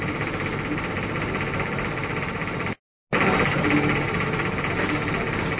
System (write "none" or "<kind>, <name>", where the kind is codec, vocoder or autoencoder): none